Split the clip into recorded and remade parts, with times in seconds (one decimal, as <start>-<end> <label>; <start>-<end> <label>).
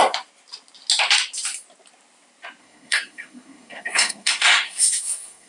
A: 0.0-2.6 recorded; 2.6-5.5 remade